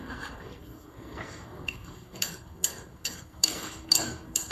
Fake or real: fake